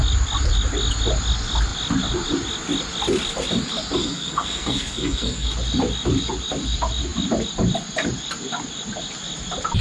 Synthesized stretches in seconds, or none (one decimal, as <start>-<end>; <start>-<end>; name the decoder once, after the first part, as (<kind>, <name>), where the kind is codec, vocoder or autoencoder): 4.0-5.5 (codec, SNAC)